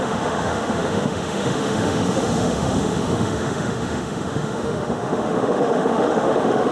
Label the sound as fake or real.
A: fake